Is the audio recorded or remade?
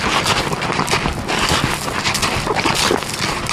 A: recorded